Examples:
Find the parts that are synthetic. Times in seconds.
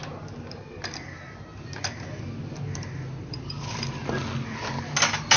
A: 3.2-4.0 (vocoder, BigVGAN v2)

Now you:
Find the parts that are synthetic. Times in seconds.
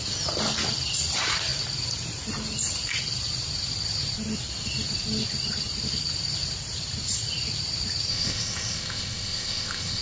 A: 8.1-10.0 (codec, ZipCodec)